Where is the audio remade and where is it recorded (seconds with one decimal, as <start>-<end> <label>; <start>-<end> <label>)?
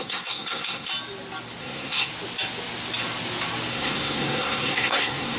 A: 0.0-0.9 remade; 0.9-1.6 recorded; 1.6-2.1 remade; 2.1-3.7 recorded; 3.7-5.4 remade